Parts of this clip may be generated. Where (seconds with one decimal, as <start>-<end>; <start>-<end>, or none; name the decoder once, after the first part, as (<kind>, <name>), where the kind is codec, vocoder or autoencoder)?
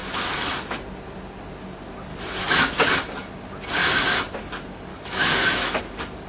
2.1-2.8 (autoencoder, DAC-VAE); 4.9-5.8